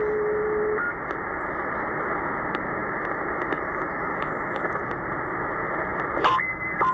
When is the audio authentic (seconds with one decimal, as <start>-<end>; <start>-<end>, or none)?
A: 0.0-5.9